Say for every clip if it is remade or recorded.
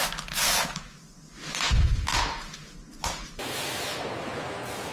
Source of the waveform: recorded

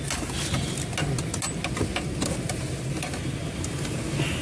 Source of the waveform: recorded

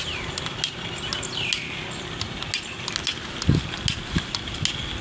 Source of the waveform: recorded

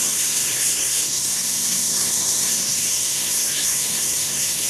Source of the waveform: remade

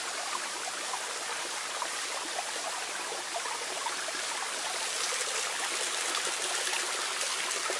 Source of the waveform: recorded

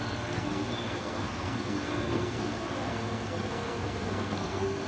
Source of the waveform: remade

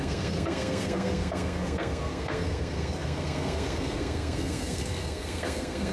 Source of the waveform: remade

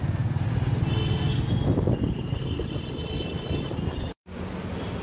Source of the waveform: recorded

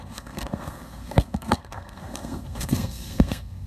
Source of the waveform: remade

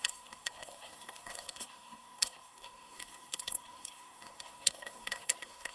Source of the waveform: remade